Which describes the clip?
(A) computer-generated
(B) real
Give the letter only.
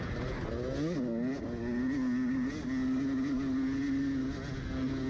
B